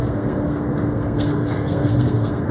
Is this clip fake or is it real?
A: fake